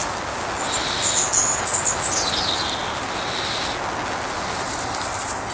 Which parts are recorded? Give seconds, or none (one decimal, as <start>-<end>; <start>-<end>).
0.0-5.5